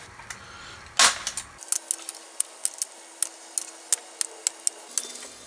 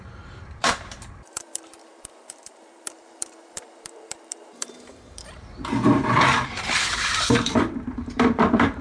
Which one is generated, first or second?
second